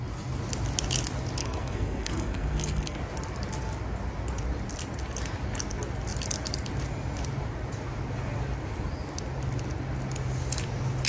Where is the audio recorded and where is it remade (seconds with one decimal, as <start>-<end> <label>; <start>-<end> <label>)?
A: 0.0-1.4 recorded; 1.4-3.0 remade; 3.0-11.1 recorded